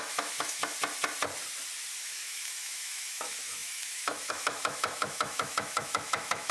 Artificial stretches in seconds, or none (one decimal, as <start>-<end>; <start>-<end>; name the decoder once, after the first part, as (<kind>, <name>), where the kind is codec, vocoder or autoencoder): 0.0-0.6 (autoencoder, DAC-VAE); 2.0-6.5

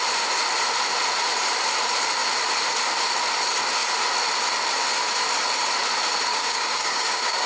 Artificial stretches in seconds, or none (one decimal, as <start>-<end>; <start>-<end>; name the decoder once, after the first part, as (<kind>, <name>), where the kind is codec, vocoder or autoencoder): 6.3-7.5 (codec, DAC)

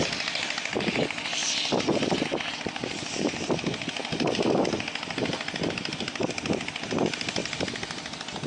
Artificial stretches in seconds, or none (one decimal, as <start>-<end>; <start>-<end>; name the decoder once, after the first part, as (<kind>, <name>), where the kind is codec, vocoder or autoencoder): 0.0-1.4 (vocoder, BigVGAN v2); 2.5-4.0; 5.7-7.4

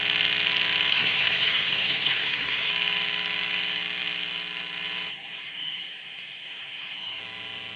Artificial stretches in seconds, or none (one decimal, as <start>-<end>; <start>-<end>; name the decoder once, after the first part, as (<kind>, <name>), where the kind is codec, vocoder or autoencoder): 0.9-2.7 (codec, SNAC); 5.1-7.2

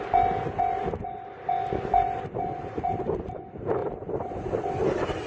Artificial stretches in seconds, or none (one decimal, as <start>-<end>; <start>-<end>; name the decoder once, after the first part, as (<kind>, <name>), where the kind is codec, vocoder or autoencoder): 3.8-4.4 (vocoder, BigVGAN v2)